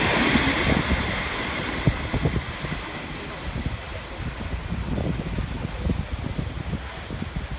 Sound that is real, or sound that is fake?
real